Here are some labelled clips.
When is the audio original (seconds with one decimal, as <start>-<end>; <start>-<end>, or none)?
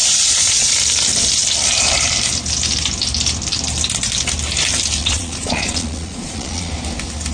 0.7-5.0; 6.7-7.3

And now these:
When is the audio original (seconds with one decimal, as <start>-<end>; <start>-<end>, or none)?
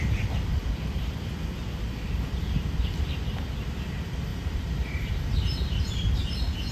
0.0-4.3; 6.2-6.7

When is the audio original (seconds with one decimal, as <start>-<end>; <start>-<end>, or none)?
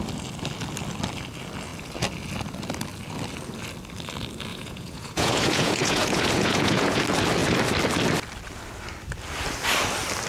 0.0-4.5; 7.0-10.3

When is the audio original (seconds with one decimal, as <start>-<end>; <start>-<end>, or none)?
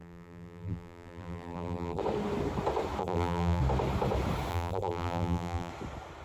2.0-3.0; 3.6-4.5; 5.7-6.2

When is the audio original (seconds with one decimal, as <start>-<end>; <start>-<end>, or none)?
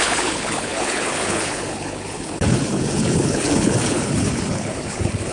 none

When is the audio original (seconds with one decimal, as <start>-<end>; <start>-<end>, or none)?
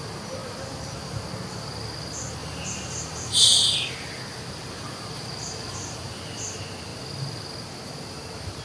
0.0-2.4; 6.4-8.6